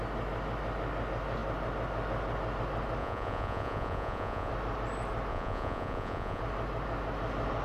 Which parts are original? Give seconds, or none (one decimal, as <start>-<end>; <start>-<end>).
0.0-3.0; 4.5-5.3; 6.4-7.6